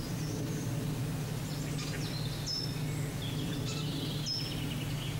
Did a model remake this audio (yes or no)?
no